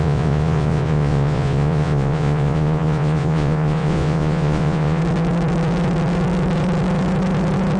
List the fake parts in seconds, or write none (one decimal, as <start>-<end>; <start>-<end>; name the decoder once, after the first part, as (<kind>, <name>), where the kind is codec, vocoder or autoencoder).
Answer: 0.0-5.0 (vocoder, Vocos)